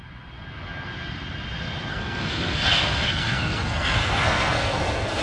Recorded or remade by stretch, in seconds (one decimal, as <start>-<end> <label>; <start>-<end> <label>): 0.0-1.9 recorded; 1.9-5.2 remade